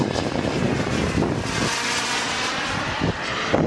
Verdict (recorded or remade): recorded